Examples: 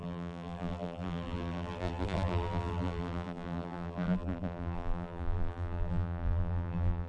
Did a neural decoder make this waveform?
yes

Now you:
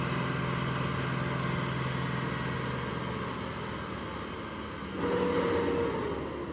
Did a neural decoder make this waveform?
no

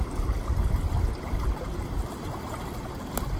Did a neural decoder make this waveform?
no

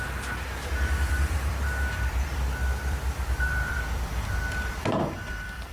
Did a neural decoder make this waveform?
yes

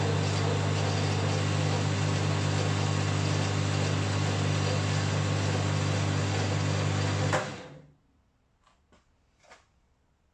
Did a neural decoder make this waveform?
no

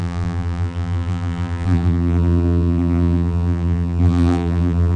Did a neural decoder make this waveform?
yes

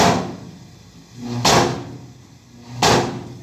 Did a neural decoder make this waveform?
no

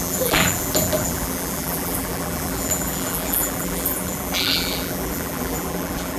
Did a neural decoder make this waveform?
yes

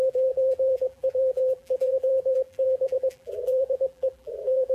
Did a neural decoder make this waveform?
yes